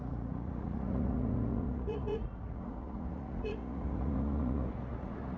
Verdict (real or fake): fake